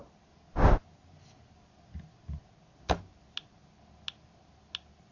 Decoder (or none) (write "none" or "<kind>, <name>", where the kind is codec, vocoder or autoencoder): none